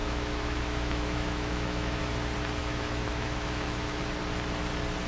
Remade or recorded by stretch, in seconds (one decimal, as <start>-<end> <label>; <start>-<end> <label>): 0.0-2.0 remade; 2.0-2.6 recorded; 2.6-4.0 remade; 4.0-5.1 recorded